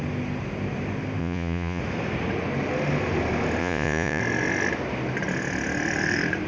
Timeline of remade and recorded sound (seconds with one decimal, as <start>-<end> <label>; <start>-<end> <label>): 0.0-1.2 recorded; 1.2-1.8 remade; 1.8-3.6 recorded; 3.6-4.2 remade; 4.2-6.5 recorded